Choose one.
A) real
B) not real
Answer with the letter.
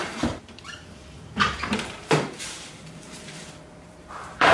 B